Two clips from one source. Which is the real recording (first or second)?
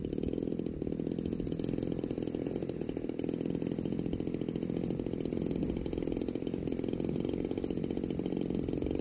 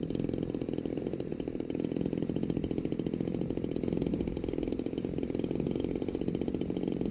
first